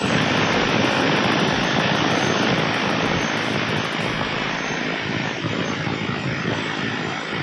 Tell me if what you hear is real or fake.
real